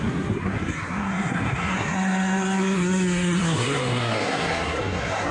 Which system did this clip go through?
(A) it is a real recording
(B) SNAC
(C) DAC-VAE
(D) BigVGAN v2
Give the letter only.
B